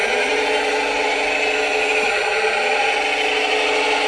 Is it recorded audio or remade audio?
recorded